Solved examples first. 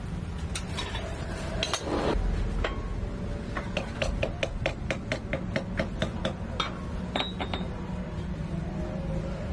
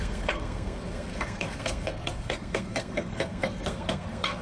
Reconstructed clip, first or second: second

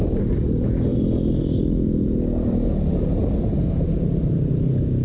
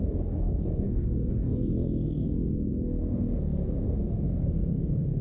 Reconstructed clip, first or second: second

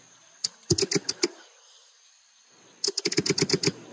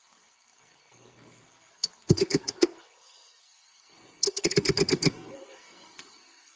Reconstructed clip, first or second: second